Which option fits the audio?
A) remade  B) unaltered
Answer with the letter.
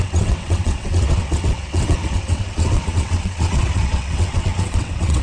A